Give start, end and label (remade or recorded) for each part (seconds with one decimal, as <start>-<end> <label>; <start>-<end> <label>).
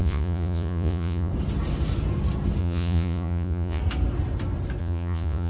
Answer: 0.0-1.3 remade; 1.3-2.6 recorded; 2.6-3.8 remade; 3.8-4.8 recorded; 4.8-5.5 remade